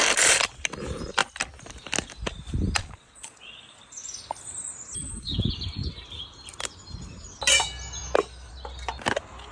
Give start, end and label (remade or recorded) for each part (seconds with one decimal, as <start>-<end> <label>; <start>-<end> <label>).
0.0-2.8 recorded; 2.8-3.6 remade; 3.6-9.5 recorded